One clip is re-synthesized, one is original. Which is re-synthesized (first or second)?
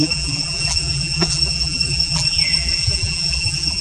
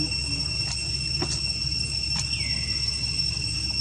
first